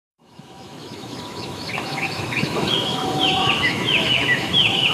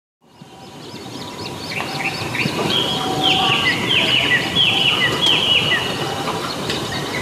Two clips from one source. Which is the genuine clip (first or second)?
second